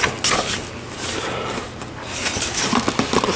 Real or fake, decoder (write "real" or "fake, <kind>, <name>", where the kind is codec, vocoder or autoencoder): real